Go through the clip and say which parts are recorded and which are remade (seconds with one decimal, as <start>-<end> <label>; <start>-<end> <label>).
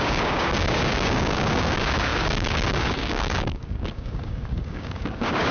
0.0-5.5 remade